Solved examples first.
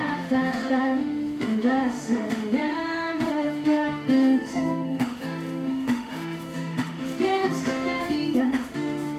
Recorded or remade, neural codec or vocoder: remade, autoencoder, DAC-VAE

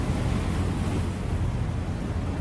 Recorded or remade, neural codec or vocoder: recorded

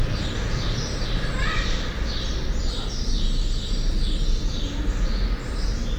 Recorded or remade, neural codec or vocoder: recorded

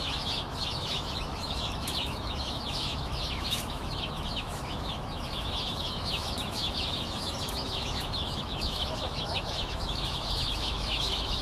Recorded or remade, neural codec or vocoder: remade, autoencoder, DAC-VAE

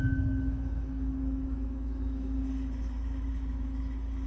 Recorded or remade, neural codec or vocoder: remade, autoencoder, DAC-VAE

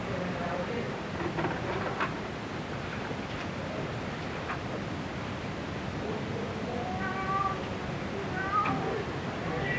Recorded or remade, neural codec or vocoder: recorded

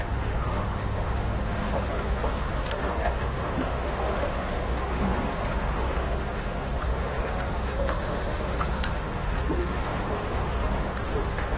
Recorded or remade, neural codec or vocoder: remade, autoencoder, DAC-VAE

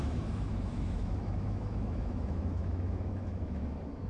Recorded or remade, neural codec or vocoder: remade, autoencoder, DAC-VAE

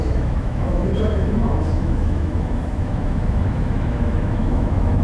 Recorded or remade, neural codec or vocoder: remade, autoencoder, DAC-VAE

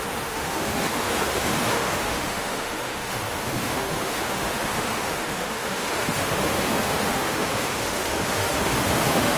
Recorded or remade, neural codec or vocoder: remade, autoencoder, DAC-VAE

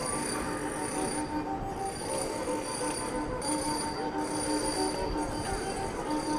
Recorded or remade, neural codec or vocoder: recorded